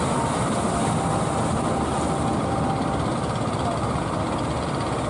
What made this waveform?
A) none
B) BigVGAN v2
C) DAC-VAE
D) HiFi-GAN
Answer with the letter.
A